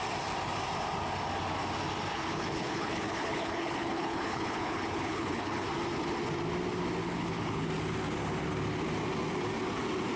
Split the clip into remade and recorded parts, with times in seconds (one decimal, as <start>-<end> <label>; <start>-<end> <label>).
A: 0.0-2.1 recorded; 2.1-5.7 remade; 5.7-7.0 recorded; 7.0-7.7 remade; 7.7-10.2 recorded